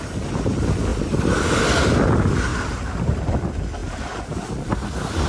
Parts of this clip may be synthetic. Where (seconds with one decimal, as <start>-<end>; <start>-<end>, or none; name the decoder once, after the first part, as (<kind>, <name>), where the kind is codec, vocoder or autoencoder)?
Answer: 2.5-3.2 (vocoder, BigVGAN v2)